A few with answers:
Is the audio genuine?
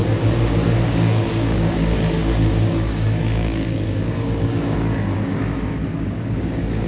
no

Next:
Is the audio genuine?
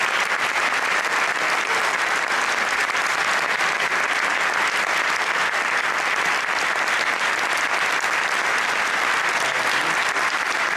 yes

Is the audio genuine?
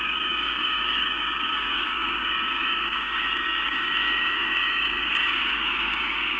no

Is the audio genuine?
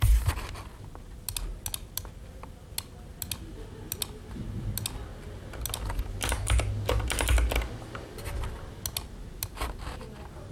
yes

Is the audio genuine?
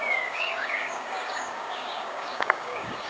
no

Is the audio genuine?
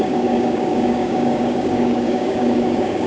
no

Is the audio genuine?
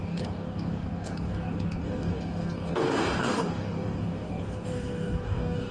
no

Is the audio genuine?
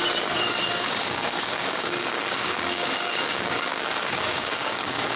no